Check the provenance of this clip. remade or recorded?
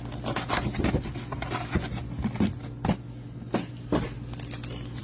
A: recorded